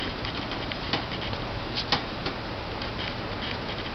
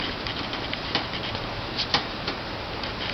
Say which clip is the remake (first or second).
second